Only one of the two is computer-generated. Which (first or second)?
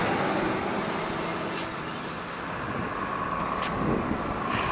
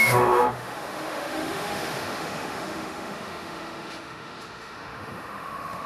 second